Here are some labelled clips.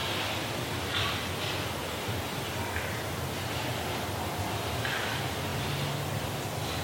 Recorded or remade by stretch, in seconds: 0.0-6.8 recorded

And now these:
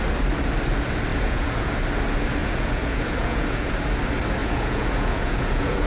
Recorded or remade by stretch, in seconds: 0.0-1.1 recorded; 1.1-1.7 remade; 1.7-2.4 recorded; 2.4-3.7 remade; 3.7-4.4 recorded; 4.4-5.9 remade

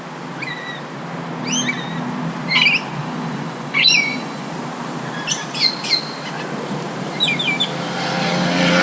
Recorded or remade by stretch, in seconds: 0.0-3.0 recorded; 3.0-4.5 remade; 4.5-8.8 recorded

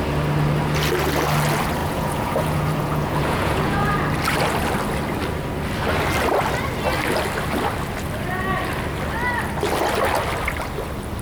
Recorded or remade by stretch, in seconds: 0.0-1.8 recorded; 1.8-3.9 remade; 3.9-11.2 recorded